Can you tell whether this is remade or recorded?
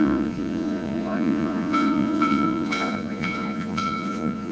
remade